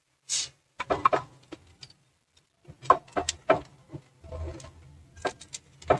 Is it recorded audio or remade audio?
recorded